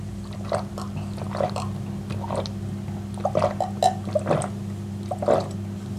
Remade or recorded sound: recorded